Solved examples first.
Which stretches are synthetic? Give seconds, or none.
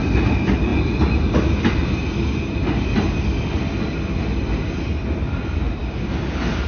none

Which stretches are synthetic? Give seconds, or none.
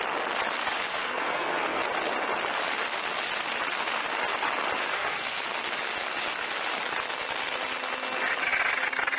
0.9-1.8 (codec, SNAC); 4.8-5.4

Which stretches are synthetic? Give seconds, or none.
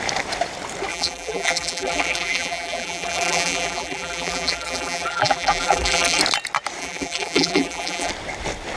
0.9-6.2 (vocoder, BigVGAN v2); 6.8-8.1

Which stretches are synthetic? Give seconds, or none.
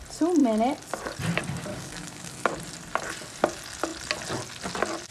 1.7-2.5 (codec, DAC)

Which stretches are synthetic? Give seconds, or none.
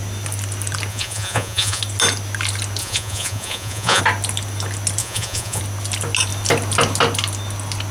0.9-1.8 (vocoder, Vocos); 2.8-4.0; 5.0-5.6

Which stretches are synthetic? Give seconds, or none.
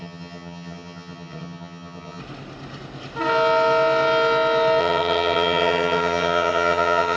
0.0-2.2 (vocoder, HiFi-GAN); 4.8-7.2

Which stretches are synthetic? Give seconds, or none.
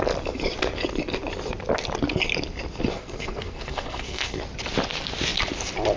2.9-4.4 (codec, SNAC)